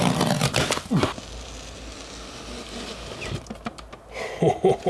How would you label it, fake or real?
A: real